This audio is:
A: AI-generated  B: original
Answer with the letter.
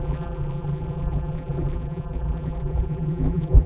A